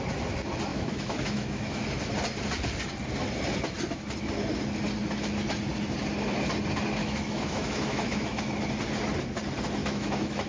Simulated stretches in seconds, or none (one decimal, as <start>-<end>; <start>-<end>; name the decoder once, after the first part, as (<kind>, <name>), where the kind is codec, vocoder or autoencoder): 0.7-1.8 (autoencoder, DAC-VAE); 7.0-8.4; 9.8-10.5